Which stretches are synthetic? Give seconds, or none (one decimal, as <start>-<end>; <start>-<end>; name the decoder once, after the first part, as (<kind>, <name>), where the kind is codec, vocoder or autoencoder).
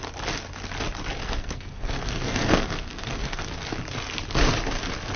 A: 1.2-3.5 (codec, SNAC)